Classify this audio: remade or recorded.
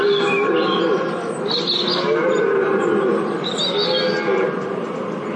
recorded